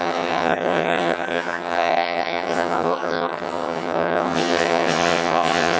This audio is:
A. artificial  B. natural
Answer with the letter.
A